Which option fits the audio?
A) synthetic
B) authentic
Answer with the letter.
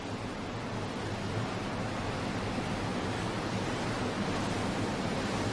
B